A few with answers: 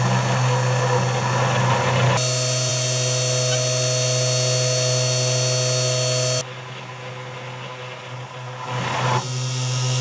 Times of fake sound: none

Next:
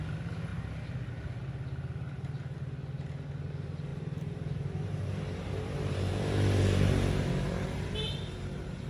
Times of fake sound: 3.9-8.9 (vocoder, BigVGAN v2)